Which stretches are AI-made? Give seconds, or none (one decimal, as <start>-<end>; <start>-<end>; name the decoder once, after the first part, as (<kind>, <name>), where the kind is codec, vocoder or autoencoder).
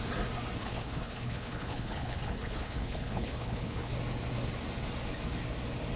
0.6-3.9 (codec, HILCodec)